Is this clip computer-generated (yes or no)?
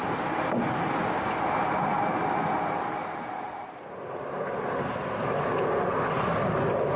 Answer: no